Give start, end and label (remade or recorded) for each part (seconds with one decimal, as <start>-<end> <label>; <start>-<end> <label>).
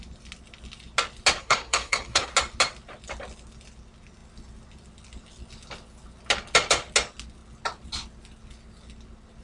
0.0-1.4 recorded; 1.4-2.3 remade; 2.3-9.4 recorded